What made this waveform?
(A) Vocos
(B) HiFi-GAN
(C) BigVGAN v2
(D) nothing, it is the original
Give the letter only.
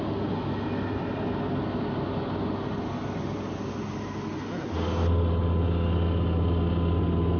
D